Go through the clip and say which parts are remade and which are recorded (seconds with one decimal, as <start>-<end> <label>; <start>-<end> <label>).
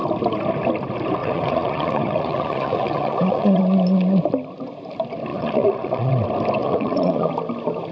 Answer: 0.0-1.2 recorded; 1.2-3.6 remade; 3.6-5.3 recorded; 5.3-6.1 remade; 6.1-6.6 recorded; 6.6-7.3 remade; 7.3-7.9 recorded